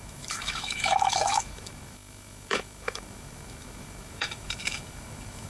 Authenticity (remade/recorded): remade